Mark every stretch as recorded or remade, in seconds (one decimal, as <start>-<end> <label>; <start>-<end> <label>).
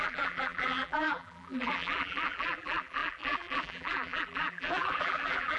0.0-5.6 remade